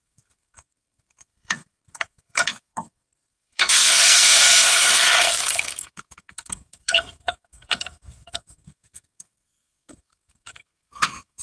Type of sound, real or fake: fake